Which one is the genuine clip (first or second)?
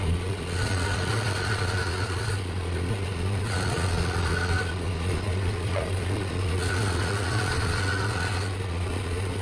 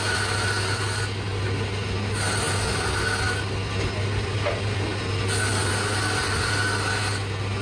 second